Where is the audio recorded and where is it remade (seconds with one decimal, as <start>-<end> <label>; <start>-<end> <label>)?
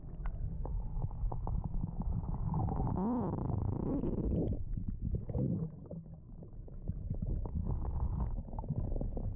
0.0-0.7 recorded; 0.7-2.9 remade; 2.9-3.4 recorded; 3.4-6.1 remade; 6.1-9.4 recorded